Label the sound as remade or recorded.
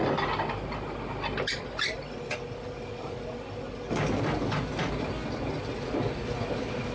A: recorded